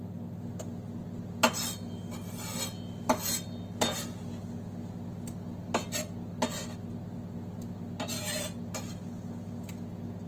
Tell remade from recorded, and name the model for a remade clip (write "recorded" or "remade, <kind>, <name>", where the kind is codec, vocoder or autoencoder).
recorded